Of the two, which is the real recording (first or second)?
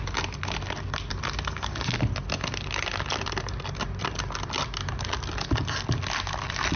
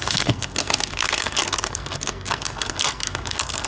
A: first